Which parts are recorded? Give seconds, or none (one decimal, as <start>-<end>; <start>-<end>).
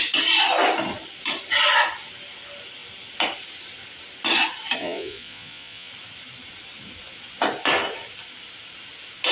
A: 0.0-4.8; 5.9-9.3